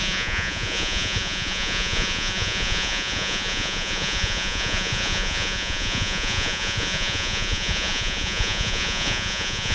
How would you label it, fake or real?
fake